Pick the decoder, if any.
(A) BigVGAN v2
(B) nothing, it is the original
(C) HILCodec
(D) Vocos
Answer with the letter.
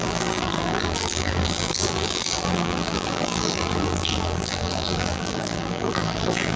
A